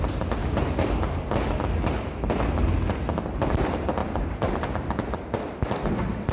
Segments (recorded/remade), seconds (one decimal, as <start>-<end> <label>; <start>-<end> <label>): 0.0-0.4 recorded; 0.4-1.3 remade; 1.3-4.0 recorded; 4.0-5.4 remade; 5.4-6.3 recorded